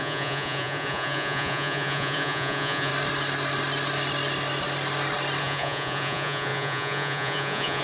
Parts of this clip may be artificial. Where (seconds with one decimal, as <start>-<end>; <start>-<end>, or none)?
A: 0.0-2.9; 5.4-7.8